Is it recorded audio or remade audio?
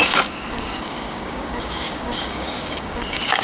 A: remade